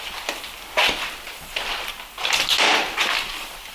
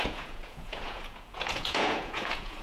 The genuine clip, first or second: first